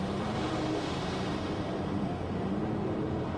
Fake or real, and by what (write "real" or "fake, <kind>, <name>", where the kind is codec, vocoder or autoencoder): fake, vocoder, BigVGAN v2